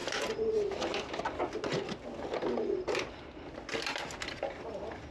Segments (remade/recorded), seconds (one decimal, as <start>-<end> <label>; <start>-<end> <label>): 0.0-5.1 recorded